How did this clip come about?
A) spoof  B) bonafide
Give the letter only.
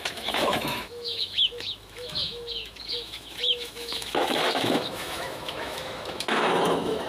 A